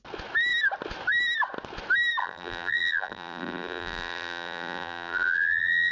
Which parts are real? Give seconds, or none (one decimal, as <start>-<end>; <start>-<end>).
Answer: 0.0-2.2